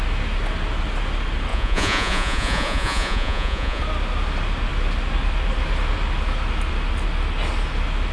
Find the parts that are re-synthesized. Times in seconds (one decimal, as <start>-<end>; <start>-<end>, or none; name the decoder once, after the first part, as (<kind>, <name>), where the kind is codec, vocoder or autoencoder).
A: 1.5-3.8 (vocoder, Vocos)